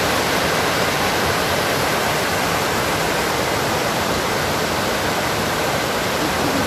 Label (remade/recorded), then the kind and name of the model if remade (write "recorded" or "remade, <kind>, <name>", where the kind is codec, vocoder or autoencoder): remade, vocoder, BigVGAN v2